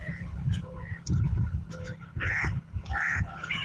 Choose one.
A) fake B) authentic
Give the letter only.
A